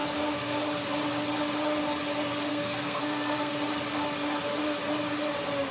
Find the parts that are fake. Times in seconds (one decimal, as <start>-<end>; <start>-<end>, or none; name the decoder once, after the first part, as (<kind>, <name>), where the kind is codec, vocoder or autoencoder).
2.5-3.5 (codec, SNAC)